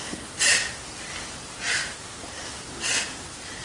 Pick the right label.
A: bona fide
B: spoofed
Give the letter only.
A